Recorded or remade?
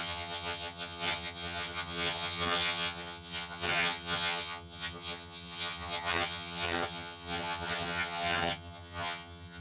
remade